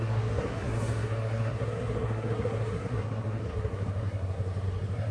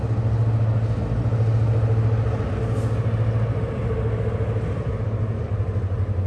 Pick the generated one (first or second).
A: first